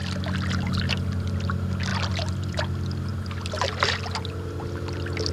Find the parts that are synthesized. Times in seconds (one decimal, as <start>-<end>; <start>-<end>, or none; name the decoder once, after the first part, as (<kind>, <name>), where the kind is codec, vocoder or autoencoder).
1.9-2.6 (vocoder, BigVGAN v2)